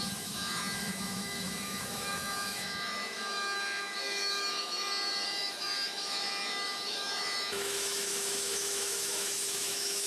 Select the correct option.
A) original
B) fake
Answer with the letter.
B